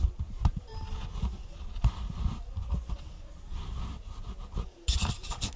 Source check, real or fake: real